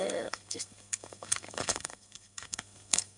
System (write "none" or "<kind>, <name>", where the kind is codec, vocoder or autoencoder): codec, SNAC